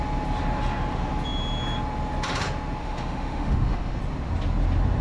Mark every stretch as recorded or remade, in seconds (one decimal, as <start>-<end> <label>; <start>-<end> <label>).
0.0-2.8 recorded; 2.8-4.0 remade; 4.0-5.0 recorded